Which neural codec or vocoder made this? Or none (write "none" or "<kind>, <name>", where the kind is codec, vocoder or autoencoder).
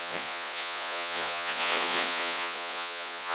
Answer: vocoder, Vocos